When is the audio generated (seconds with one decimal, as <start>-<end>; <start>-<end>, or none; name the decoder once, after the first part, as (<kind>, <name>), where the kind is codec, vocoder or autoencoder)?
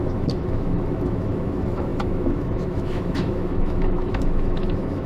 0.0-5.1 (autoencoder, DAC-VAE)